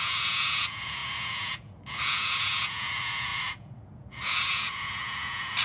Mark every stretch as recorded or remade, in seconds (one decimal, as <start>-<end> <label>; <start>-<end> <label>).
0.0-5.6 remade

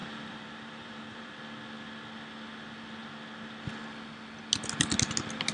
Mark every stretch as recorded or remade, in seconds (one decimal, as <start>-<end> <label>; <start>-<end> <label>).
0.0-1.3 remade; 1.3-5.5 recorded

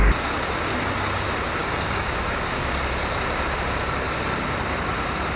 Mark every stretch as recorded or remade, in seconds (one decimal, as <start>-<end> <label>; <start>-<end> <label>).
0.0-1.6 recorded; 1.6-2.8 remade; 2.8-5.4 recorded

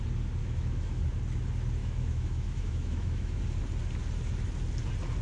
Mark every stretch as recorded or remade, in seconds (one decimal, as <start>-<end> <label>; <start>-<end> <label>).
0.0-0.4 recorded; 0.4-1.0 remade; 1.0-1.8 recorded; 1.8-3.4 remade; 3.4-5.2 recorded

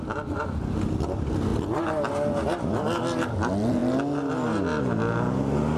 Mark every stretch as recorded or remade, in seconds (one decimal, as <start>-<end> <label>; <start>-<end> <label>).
0.0-5.8 recorded

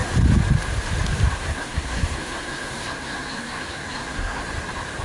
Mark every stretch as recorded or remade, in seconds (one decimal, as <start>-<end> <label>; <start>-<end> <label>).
0.0-1.4 recorded; 1.4-4.4 remade; 4.4-5.0 recorded